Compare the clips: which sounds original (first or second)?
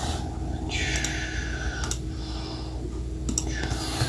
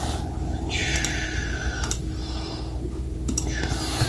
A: first